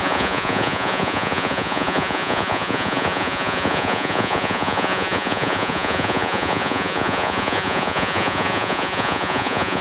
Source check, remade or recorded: remade